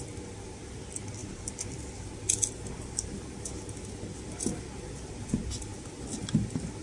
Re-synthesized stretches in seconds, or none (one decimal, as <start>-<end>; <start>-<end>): none